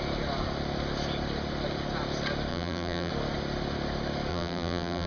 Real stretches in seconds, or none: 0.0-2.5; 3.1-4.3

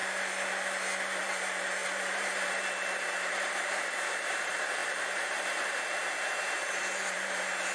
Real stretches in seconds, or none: 0.0-1.2

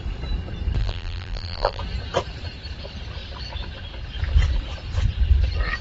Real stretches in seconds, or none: 0.0-0.8; 1.8-5.8

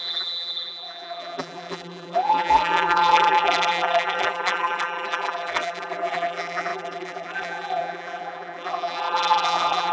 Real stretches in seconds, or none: none

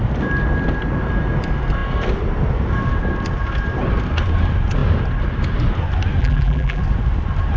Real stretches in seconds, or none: 0.0-6.2; 6.8-7.6

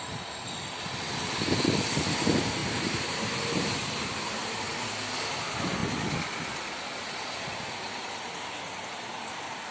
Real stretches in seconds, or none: 0.0-2.6; 4.9-9.7